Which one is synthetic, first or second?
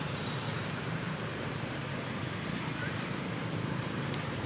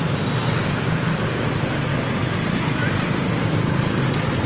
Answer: first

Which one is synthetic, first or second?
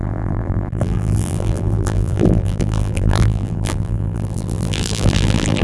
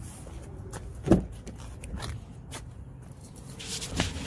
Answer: first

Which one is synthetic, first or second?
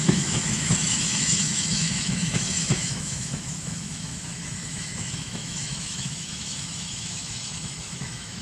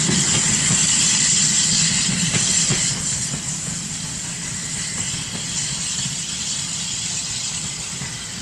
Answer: first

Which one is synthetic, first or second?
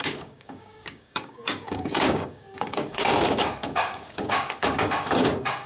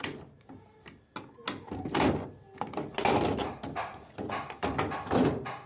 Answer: first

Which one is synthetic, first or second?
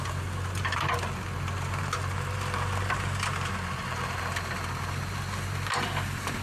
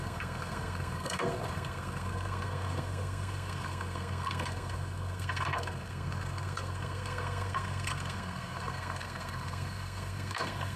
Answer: second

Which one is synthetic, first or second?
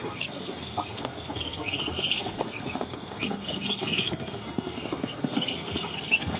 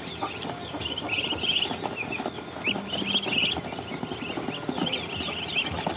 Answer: first